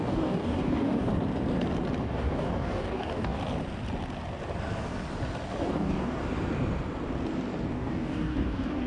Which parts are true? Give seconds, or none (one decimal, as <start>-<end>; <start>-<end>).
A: 1.1-2.0; 3.4-5.7; 6.2-7.7